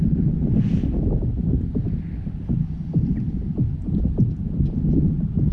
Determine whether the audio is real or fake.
real